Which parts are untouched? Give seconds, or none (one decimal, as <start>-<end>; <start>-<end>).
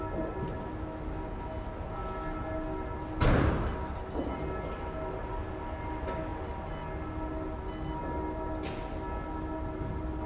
0.0-10.3